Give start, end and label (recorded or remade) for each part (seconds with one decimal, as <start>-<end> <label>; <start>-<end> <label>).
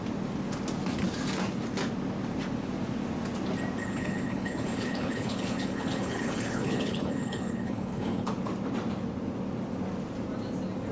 0.0-3.8 recorded; 3.8-8.3 remade; 8.3-10.9 recorded